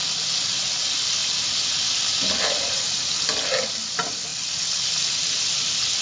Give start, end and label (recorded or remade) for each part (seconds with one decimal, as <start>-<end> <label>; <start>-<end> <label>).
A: 0.0-6.0 recorded